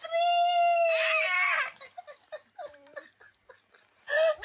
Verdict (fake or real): real